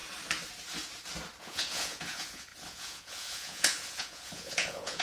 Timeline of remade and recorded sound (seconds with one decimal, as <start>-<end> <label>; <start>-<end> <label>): 0.0-1.4 recorded; 1.4-5.0 remade